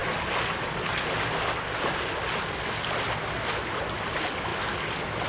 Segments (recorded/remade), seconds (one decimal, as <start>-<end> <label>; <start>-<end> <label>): 0.0-5.3 recorded